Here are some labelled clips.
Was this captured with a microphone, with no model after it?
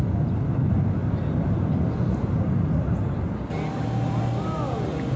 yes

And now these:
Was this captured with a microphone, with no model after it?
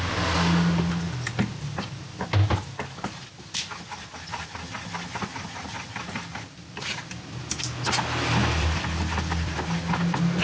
yes